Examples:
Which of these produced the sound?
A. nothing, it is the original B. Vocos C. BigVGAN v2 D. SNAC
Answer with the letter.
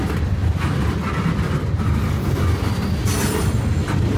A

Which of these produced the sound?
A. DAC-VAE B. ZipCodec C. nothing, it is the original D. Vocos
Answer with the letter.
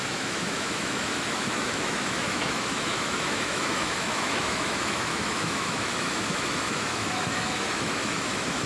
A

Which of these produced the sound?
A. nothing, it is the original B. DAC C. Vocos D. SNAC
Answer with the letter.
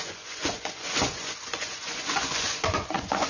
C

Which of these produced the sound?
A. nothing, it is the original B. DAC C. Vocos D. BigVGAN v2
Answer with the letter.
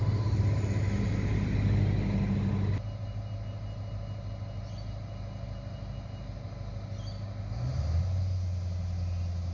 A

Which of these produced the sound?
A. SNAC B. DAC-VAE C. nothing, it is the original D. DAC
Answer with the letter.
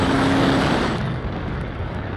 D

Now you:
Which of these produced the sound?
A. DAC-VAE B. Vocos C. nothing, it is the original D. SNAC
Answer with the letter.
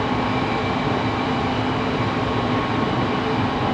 C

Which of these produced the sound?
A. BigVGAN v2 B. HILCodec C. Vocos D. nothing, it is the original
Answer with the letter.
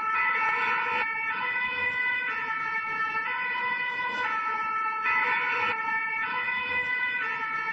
C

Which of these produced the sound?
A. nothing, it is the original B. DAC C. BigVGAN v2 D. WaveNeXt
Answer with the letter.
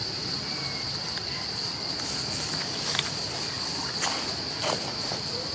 A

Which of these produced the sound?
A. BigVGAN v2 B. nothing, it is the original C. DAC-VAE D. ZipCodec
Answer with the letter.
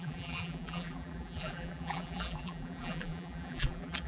A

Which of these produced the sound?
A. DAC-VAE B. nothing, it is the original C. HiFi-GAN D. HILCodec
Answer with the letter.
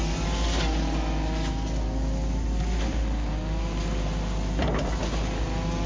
B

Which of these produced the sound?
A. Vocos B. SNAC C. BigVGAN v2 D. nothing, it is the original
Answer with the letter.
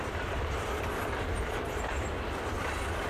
C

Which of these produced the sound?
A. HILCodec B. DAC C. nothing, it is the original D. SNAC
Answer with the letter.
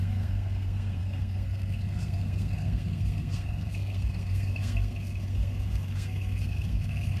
D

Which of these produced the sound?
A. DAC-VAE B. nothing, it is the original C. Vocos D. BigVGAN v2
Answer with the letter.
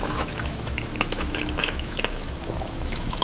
A